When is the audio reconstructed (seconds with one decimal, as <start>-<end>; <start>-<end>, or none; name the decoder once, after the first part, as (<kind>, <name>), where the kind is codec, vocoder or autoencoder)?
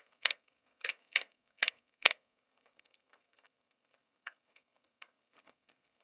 0.0-6.0 (codec, SNAC)